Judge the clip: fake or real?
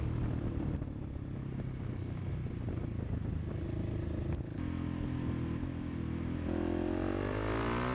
real